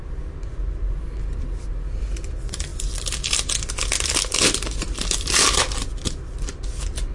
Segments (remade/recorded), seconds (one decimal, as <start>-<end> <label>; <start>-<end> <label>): 0.0-7.1 recorded